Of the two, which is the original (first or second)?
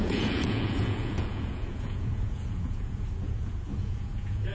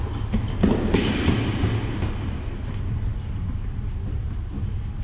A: second